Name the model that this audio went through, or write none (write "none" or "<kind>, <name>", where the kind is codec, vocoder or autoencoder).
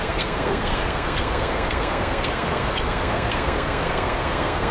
codec, SNAC